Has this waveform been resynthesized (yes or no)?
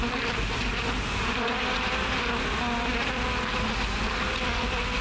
no